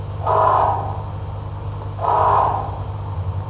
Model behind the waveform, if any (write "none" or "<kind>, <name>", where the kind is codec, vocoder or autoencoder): none